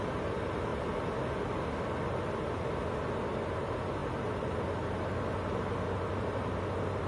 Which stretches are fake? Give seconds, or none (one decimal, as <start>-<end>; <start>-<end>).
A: none